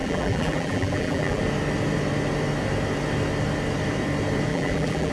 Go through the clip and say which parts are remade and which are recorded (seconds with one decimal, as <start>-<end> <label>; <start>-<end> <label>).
0.0-1.4 remade; 1.4-4.5 recorded; 4.5-5.1 remade